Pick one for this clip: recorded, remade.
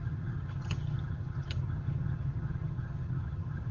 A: remade